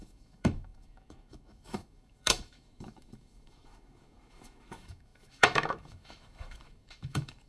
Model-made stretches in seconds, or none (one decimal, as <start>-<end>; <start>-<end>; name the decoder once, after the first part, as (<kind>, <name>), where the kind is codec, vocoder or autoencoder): 0.0-7.5 (autoencoder, DAC-VAE)